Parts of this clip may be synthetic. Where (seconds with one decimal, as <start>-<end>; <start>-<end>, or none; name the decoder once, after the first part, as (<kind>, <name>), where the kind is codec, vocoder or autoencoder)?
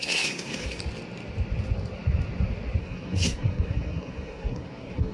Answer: 0.0-0.8 (codec, SNAC); 2.8-5.1